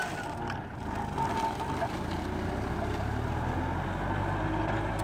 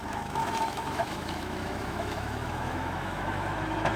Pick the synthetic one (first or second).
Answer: second